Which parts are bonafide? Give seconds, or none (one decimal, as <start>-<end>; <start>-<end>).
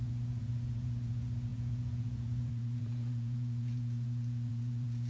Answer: none